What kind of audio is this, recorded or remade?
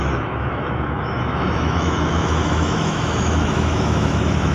remade